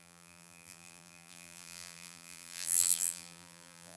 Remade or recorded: remade